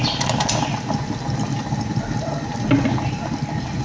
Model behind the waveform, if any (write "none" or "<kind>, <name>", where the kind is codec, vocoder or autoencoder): none